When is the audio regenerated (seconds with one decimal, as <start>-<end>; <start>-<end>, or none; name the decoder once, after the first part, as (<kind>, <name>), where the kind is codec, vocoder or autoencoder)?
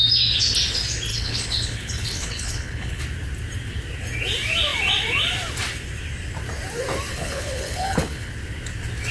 1.1-3.0 (codec, HILCodec); 7.1-8.3